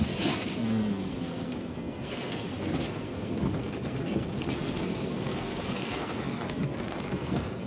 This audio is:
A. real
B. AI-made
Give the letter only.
B